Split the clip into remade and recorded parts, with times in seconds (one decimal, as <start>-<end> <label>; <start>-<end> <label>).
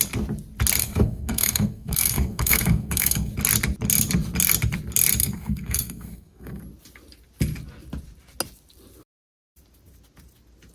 0.0-0.8 recorded; 0.8-3.3 remade; 3.3-5.2 recorded; 5.2-6.6 remade; 6.6-10.7 recorded